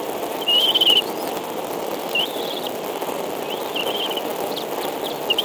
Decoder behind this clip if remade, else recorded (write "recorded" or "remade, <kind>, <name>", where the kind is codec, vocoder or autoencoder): recorded